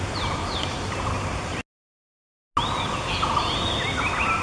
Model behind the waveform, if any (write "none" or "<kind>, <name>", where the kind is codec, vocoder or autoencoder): none